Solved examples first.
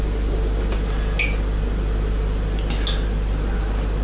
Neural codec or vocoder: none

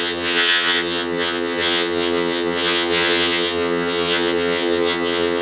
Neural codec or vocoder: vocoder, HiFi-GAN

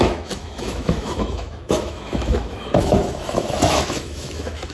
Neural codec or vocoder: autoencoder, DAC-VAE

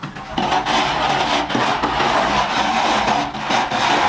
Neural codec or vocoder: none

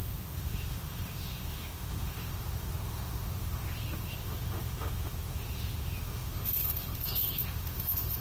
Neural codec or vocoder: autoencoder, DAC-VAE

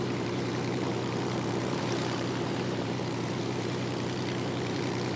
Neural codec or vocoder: vocoder, BigVGAN v2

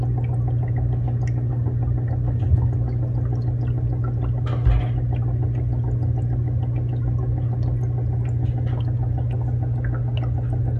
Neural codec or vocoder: none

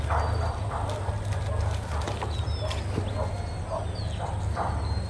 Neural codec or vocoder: none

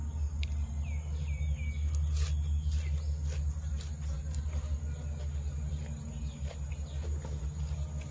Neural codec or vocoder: none